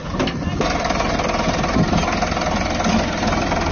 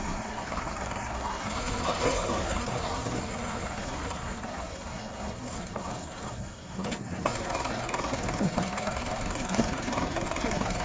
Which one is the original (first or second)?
first